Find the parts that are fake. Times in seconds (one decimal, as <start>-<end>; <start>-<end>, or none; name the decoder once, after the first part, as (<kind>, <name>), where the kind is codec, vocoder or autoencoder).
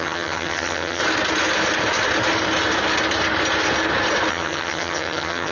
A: 0.0-1.0 (vocoder, HiFi-GAN); 4.3-5.5